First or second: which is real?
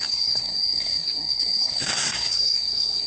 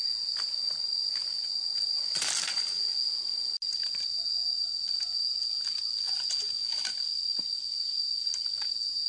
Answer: second